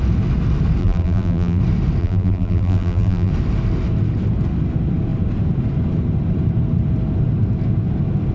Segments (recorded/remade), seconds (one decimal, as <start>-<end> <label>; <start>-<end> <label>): 0.0-0.8 recorded; 0.8-1.6 remade; 1.6-2.0 recorded; 2.0-3.3 remade; 3.3-8.3 recorded